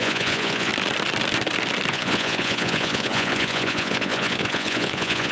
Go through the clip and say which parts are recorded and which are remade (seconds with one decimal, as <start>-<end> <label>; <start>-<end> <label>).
0.0-0.7 remade; 0.7-1.9 recorded; 1.9-5.3 remade